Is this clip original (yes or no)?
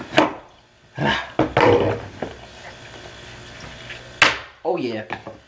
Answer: yes